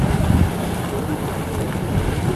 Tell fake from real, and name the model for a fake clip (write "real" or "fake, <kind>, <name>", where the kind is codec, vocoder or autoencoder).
real